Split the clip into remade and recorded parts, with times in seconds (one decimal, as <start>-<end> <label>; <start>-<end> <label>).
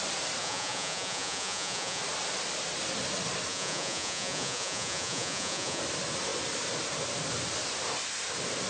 0.0-0.4 recorded; 0.4-2.0 remade; 2.0-3.5 recorded; 3.5-5.8 remade; 5.8-8.7 recorded